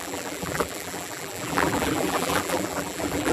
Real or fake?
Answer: fake